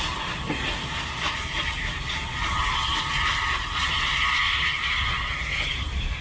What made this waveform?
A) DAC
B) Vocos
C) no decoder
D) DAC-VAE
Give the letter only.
C